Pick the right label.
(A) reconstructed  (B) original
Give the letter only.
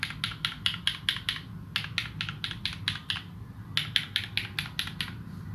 B